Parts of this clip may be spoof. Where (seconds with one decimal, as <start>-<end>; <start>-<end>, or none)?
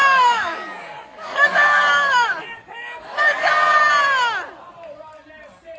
0.0-3.5